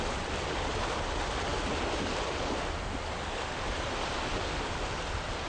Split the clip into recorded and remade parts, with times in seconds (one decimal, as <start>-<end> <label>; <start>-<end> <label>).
0.0-5.5 recorded